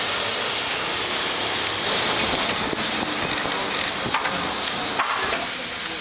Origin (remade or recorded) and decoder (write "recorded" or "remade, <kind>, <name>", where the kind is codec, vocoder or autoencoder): recorded